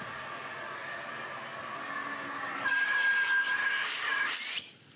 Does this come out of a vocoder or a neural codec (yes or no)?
no